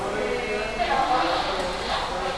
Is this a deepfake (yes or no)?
no